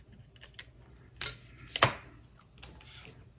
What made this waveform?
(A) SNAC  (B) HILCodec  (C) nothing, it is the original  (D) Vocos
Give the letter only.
C